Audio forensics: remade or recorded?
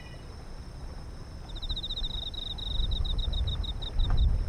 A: recorded